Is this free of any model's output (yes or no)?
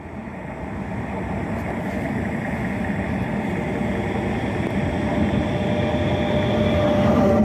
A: yes